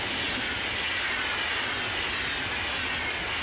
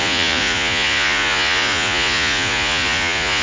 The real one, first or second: first